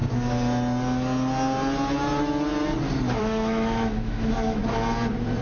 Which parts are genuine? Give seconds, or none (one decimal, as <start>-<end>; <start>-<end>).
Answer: 0.0-3.2; 4.6-5.4